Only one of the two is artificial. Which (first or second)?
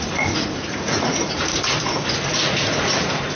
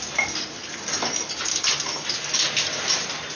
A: first